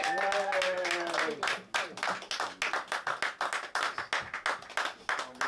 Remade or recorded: recorded